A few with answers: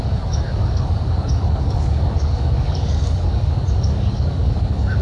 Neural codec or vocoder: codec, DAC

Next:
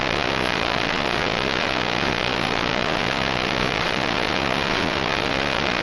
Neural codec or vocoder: vocoder, Vocos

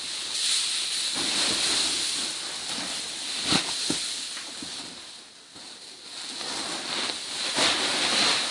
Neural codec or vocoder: none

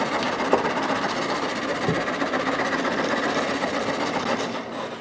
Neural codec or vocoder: none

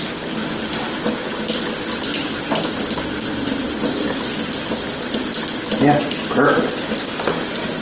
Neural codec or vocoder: none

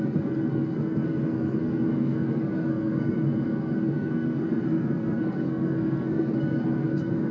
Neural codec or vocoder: codec, SNAC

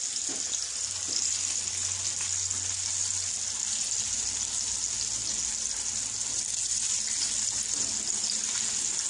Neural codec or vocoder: none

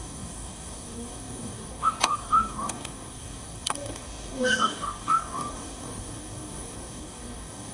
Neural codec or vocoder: codec, DAC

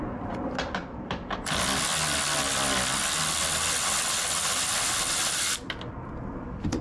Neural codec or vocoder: none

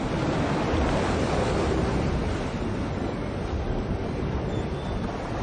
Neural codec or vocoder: none